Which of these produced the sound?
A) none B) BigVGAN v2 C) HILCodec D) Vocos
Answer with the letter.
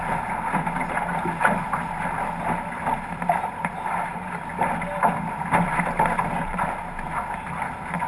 A